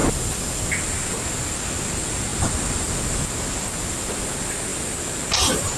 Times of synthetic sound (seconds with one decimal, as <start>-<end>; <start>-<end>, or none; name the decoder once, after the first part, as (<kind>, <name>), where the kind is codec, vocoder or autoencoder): 0.0-0.6 (vocoder, BigVGAN v2)